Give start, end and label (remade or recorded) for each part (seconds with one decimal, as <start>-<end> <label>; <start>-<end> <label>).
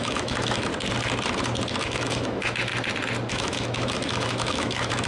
0.0-0.7 remade; 0.7-1.7 recorded; 1.7-2.7 remade; 2.7-3.3 recorded; 3.3-5.1 remade